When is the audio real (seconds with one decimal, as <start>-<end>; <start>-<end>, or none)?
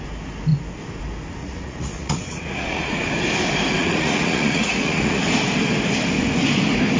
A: 0.0-1.4; 3.0-3.8; 5.2-7.0